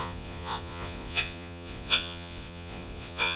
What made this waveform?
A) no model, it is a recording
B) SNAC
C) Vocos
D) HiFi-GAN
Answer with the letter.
C